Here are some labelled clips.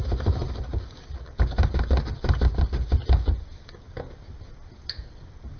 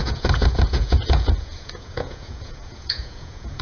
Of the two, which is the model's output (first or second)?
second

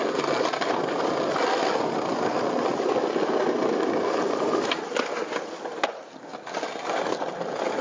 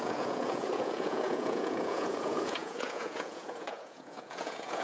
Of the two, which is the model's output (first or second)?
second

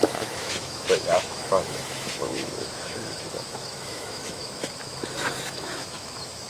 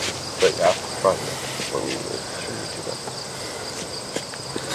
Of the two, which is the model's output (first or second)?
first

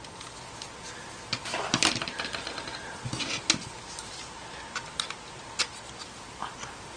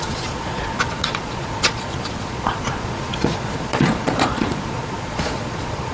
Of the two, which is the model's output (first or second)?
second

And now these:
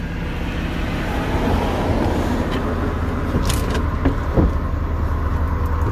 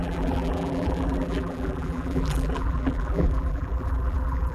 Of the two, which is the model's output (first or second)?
second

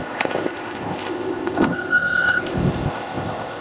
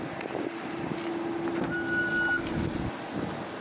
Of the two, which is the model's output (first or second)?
first